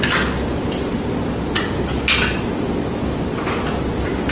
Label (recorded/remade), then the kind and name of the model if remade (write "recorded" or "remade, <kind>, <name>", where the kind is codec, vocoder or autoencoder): recorded